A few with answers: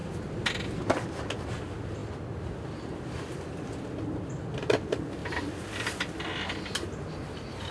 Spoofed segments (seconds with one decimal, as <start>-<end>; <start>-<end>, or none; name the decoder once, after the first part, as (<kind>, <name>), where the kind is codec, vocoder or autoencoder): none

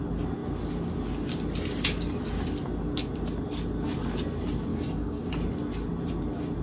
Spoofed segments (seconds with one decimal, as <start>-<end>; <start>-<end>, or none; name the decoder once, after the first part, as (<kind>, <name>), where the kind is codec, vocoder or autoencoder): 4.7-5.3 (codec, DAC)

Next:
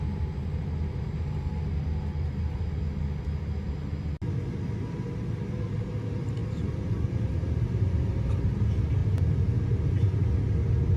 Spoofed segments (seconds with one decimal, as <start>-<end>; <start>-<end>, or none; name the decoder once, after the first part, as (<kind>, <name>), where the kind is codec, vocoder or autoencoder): none

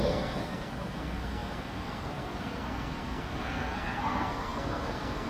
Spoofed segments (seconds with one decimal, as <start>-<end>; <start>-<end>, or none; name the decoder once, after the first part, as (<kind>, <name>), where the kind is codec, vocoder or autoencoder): 0.0-5.3 (codec, SNAC)